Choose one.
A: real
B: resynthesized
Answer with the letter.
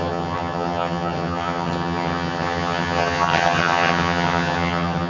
B